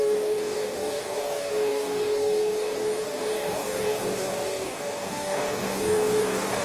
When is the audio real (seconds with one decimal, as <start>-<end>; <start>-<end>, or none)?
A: none